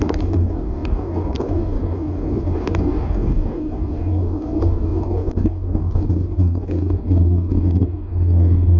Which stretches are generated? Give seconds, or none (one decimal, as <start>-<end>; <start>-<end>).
0.0-8.8